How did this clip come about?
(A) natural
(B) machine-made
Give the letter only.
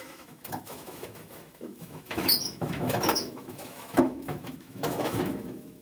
B